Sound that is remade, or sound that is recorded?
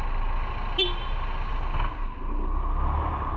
recorded